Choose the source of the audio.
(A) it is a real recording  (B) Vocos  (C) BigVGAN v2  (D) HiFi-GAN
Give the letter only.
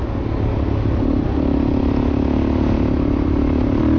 A